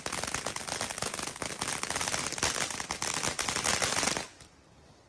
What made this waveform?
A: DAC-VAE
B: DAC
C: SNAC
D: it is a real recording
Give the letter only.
D